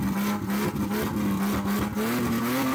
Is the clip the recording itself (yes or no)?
yes